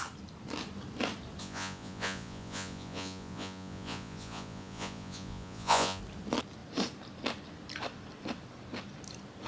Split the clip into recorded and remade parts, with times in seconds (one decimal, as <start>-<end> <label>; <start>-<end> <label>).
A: 0.0-1.4 recorded; 1.4-6.0 remade; 6.0-9.5 recorded